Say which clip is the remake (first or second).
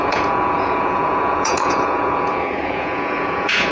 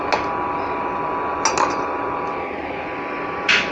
first